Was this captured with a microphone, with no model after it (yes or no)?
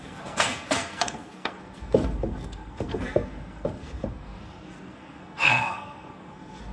no